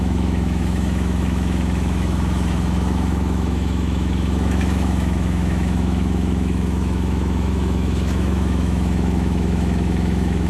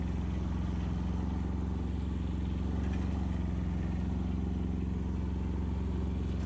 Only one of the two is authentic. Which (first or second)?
second